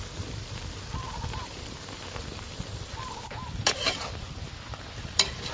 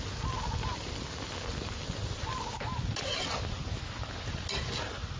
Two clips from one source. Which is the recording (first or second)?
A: second